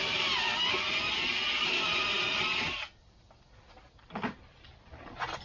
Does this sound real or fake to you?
real